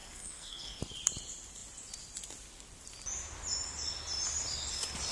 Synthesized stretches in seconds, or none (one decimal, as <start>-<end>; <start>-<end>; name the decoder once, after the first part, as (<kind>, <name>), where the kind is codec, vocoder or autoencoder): 0.0-0.8 (codec, SNAC)